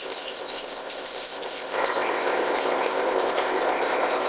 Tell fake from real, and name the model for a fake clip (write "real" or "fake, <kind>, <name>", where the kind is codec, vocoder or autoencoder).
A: fake, codec, ZipCodec